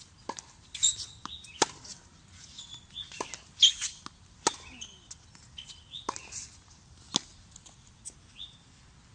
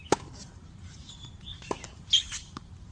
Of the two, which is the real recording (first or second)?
first